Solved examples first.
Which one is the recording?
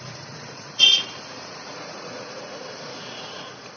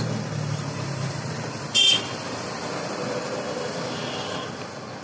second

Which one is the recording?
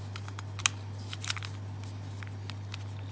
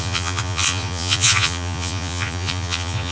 first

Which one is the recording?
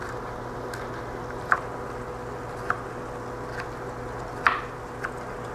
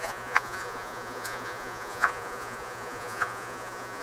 first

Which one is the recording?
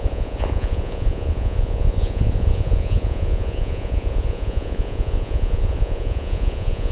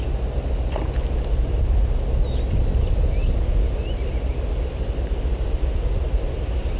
second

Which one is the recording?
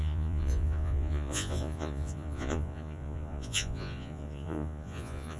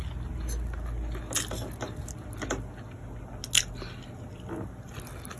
second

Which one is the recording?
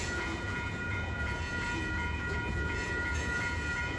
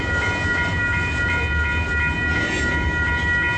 second